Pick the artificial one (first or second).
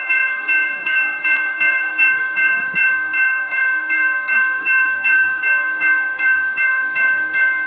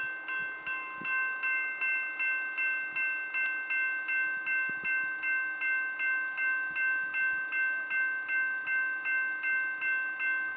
first